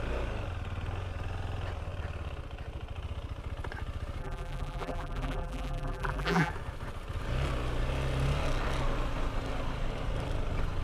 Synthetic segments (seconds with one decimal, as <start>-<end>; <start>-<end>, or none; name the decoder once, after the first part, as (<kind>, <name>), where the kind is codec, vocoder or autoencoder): 4.2-6.5 (vocoder, BigVGAN v2)

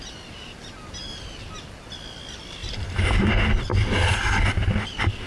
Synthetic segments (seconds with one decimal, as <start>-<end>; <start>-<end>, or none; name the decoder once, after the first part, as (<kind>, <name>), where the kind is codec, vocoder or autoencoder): 2.6-3.5 (vocoder, BigVGAN v2)

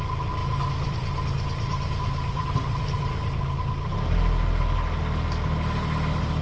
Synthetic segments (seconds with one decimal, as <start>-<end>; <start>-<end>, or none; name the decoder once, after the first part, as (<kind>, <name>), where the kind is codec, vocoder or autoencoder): 0.4-3.8 (vocoder, BigVGAN v2)

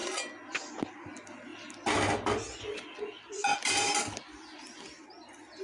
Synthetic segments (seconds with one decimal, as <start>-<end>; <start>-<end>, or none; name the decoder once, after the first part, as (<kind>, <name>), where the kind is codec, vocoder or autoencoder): none

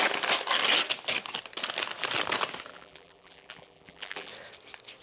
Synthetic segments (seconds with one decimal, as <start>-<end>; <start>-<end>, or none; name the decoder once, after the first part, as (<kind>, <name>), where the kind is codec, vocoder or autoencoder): 2.7-4.3 (vocoder, BigVGAN v2)